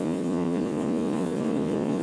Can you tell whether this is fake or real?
fake